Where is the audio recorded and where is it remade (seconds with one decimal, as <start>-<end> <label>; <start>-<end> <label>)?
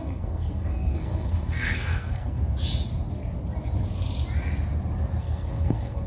0.0-2.4 remade; 2.4-5.2 recorded; 5.2-6.1 remade